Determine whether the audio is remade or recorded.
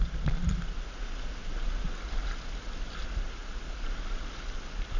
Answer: recorded